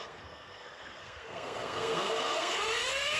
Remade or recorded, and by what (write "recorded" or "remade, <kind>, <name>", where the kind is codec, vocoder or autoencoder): remade, codec, SNAC